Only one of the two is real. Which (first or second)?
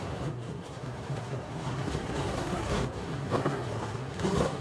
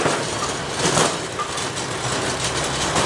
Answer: second